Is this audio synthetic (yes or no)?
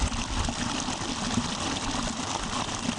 no